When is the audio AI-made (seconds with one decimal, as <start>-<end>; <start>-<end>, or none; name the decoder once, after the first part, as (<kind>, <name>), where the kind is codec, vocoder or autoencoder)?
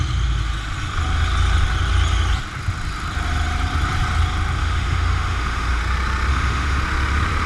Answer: 4.6-5.8 (autoencoder, DAC-VAE); 6.3-6.8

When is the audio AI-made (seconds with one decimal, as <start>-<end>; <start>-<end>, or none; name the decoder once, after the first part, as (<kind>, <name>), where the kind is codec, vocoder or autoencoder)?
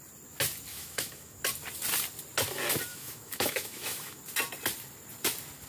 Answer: 0.7-1.4 (autoencoder, DAC-VAE); 2.9-4.2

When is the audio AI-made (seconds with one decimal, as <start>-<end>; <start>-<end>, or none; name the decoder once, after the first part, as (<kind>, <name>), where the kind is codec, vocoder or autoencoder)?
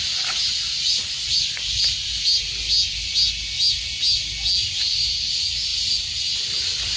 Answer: none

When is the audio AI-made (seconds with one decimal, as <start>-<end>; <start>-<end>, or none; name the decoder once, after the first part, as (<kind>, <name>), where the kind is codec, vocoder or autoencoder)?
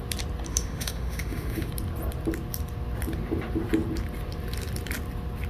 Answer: 0.5-1.7 (autoencoder, DAC-VAE)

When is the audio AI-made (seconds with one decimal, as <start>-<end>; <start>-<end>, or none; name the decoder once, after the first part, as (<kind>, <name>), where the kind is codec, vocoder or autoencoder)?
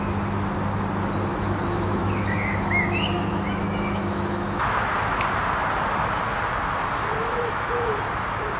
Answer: 1.3-4.7 (autoencoder, DAC-VAE); 7.2-7.9